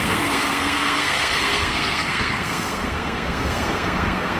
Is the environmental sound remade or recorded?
remade